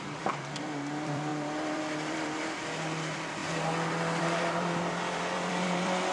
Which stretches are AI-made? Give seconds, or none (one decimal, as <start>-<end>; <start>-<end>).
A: 0.0-3.4; 4.2-6.1